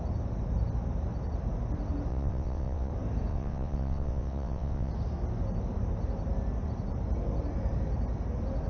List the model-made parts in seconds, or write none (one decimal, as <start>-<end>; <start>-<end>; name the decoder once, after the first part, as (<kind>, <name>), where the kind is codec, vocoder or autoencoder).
2.1-2.9 (vocoder, WaveNeXt); 3.3-4.9